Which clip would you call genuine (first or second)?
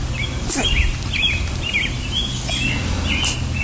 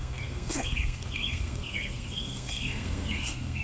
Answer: first